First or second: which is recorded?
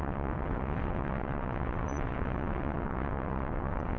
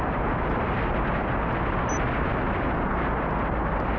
second